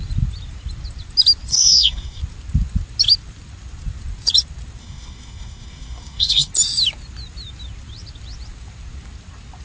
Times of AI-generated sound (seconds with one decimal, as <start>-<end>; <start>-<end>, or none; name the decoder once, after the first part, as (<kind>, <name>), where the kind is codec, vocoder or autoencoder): 1.5-2.2 (codec, SNAC); 4.8-6.5